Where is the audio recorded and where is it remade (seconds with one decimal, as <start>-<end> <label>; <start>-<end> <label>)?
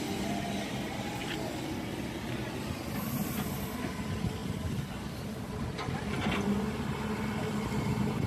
0.0-8.3 recorded